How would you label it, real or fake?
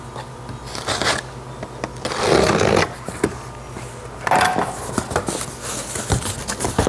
real